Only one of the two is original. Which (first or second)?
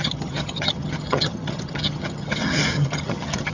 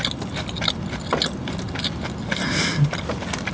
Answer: second